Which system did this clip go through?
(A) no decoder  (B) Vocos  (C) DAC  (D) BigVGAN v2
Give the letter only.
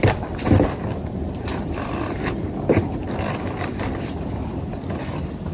D